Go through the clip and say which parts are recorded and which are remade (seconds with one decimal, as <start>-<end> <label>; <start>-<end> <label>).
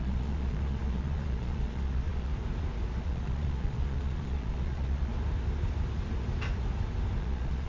0.0-2.3 remade; 2.3-3.0 recorded; 3.0-5.1 remade; 5.1-7.2 recorded; 7.2-7.7 remade